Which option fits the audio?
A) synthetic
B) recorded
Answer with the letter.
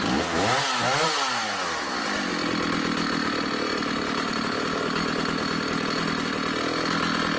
B